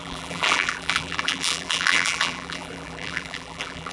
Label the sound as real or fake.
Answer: fake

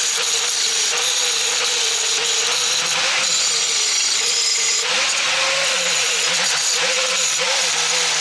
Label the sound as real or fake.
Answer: real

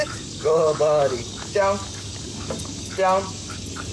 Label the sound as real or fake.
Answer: fake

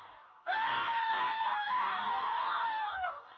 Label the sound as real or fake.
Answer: fake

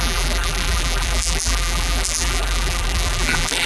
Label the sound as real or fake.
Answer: fake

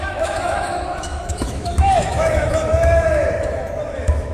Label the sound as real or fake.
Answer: fake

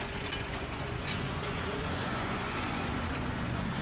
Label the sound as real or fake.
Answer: fake